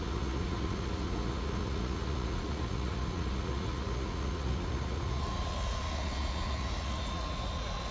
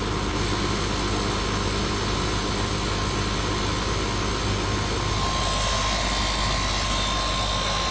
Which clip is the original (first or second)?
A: second